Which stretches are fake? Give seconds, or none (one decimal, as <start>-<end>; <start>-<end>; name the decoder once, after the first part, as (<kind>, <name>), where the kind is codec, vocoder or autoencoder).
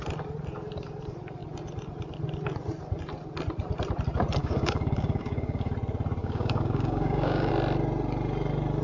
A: 4.4-5.7 (codec, DAC); 6.2-7.5